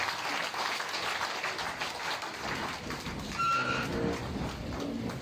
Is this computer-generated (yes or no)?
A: no